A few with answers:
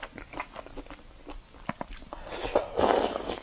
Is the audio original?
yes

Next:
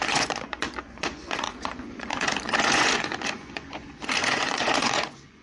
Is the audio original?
no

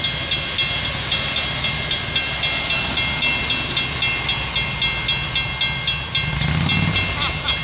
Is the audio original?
yes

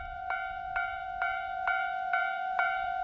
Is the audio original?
no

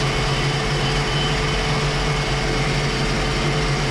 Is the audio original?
yes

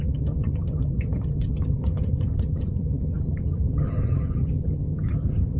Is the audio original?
no